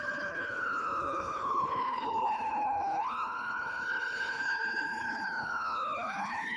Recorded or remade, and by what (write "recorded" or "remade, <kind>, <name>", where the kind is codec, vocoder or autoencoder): remade, codec, HILCodec